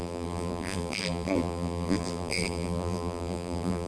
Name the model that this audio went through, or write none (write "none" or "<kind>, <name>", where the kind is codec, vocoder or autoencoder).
vocoder, BigVGAN v2